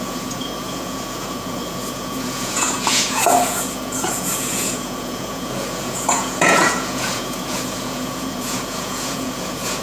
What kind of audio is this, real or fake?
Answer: fake